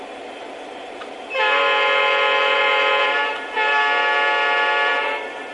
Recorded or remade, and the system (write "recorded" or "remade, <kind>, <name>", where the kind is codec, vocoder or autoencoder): recorded